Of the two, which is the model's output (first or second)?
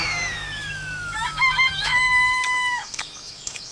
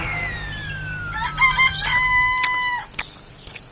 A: first